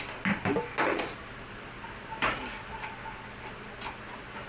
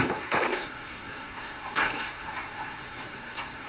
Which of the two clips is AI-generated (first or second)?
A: second